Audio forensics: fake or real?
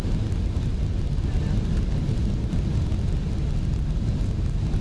real